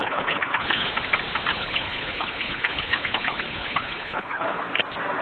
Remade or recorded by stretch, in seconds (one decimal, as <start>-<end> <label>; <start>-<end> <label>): 0.0-0.9 remade; 0.9-1.5 recorded; 1.5-4.6 remade; 4.6-5.2 recorded